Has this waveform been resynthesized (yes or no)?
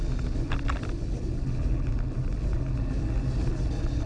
no